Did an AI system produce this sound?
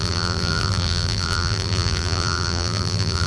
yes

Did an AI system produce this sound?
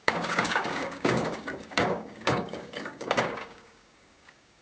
yes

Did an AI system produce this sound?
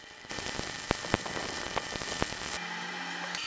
no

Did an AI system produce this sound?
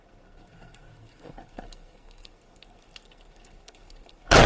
yes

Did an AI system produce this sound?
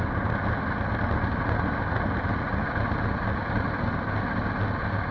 no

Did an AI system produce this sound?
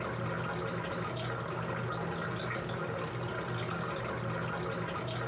no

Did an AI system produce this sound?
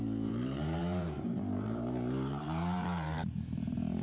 yes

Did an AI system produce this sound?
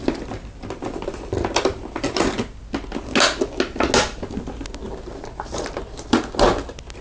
no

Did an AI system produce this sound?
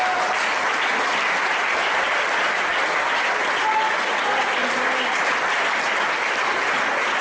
no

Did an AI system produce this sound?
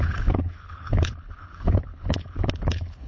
yes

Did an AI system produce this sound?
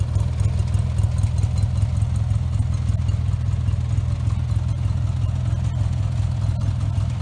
no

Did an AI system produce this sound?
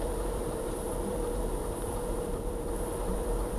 yes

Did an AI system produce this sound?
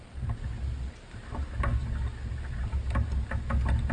no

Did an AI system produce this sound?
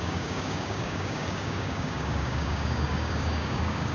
yes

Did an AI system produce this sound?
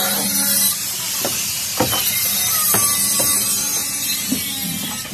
no